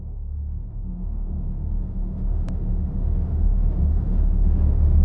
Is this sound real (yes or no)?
no